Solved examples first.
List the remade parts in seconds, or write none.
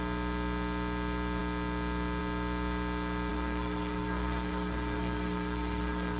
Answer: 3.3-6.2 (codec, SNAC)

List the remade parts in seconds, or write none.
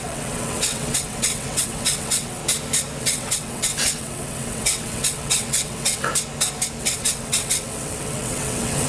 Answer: 0.0-2.4 (vocoder, WaveNeXt); 3.0-6.1; 6.8-8.9